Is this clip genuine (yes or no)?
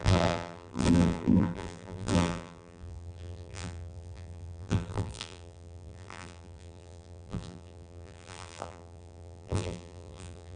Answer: no